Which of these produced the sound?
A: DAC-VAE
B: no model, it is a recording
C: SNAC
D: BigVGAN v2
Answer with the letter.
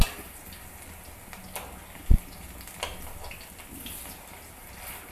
B